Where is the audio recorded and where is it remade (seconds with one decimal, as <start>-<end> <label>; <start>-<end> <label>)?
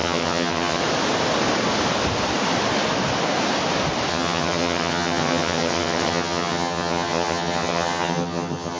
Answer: 0.0-0.8 remade; 0.8-4.1 recorded; 4.1-8.8 remade